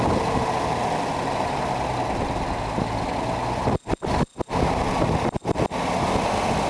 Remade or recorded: recorded